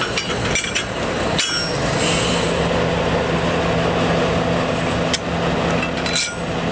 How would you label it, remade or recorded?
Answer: recorded